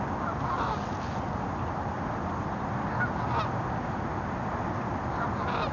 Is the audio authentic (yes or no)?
yes